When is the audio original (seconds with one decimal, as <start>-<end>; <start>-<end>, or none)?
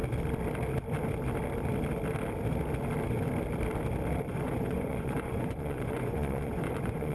0.0-4.3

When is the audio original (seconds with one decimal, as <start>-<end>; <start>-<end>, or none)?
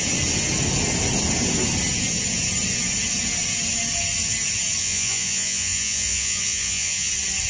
0.0-4.8; 7.1-7.5